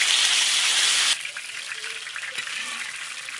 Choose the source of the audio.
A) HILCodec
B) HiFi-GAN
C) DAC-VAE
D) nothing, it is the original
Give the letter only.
D